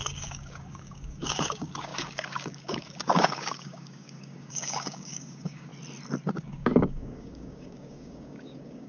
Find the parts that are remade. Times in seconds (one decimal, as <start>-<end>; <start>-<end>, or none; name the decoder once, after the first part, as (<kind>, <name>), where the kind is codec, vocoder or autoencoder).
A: 0.0-5.7 (codec, DAC); 6.3-8.9